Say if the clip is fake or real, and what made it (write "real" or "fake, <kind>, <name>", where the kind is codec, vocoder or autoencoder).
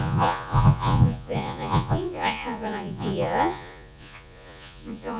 fake, vocoder, Vocos